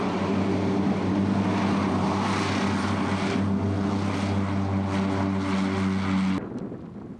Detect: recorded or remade recorded